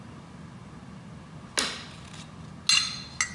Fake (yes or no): no